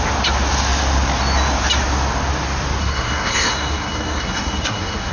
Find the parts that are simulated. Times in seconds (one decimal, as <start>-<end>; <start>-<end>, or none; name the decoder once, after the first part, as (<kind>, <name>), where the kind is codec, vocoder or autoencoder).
2.8-5.1 (codec, SNAC)